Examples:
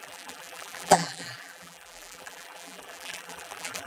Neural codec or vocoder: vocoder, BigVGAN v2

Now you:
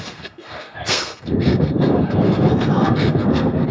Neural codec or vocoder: codec, SNAC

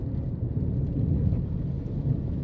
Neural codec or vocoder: none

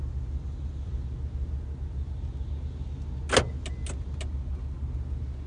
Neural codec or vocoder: none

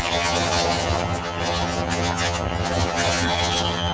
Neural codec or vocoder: vocoder, HiFi-GAN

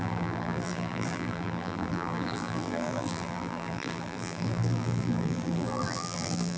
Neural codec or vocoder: vocoder, BigVGAN v2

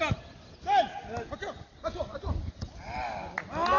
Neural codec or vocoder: none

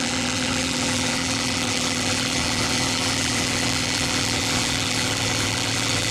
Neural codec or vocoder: vocoder, BigVGAN v2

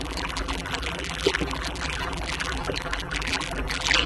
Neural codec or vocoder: vocoder, BigVGAN v2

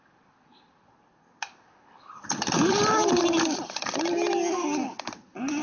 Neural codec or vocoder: none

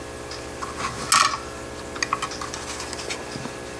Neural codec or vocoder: none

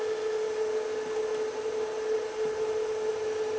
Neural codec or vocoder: none